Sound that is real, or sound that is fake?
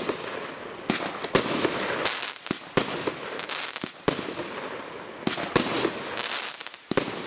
real